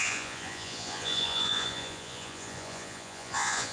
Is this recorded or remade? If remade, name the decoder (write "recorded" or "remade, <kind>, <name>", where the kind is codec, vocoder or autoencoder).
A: remade, vocoder, Vocos